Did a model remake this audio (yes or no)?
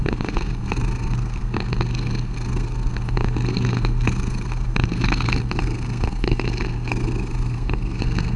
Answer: yes